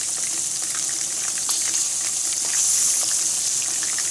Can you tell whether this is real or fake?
real